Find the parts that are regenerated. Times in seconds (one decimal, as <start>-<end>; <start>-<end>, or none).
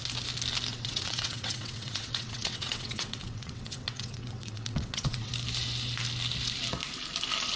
0.7-5.3